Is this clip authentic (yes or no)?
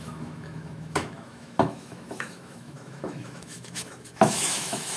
no